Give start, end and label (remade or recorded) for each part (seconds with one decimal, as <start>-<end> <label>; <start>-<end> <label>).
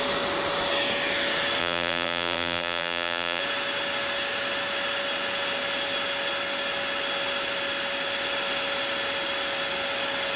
0.0-1.6 recorded; 1.6-3.4 remade; 3.4-10.4 recorded